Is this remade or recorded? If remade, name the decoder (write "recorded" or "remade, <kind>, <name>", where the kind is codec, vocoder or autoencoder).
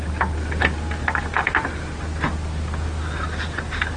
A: recorded